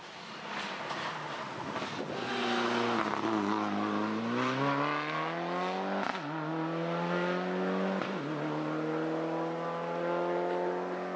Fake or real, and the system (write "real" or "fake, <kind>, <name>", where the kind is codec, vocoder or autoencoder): real